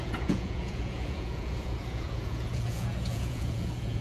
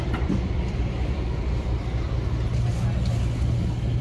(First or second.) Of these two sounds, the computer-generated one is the first